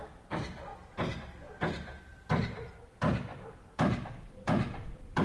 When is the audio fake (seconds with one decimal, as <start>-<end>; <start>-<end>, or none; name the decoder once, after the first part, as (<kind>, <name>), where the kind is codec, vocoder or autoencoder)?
2.1-2.8 (vocoder, BigVGAN v2); 3.3-5.2